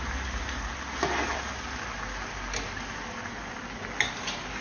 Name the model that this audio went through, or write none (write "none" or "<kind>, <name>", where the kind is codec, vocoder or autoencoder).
none